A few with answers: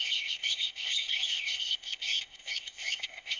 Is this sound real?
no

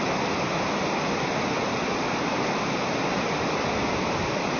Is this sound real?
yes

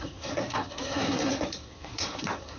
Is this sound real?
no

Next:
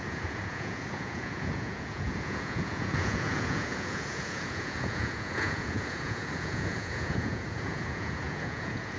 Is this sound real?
no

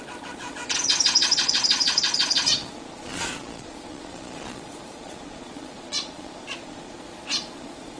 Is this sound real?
no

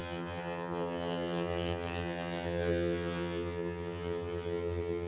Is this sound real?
no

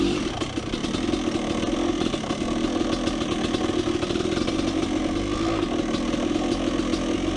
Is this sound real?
yes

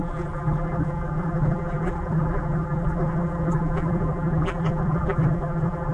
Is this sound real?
no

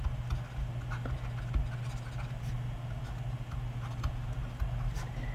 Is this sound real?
yes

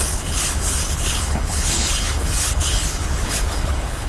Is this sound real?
no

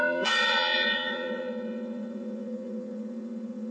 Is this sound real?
no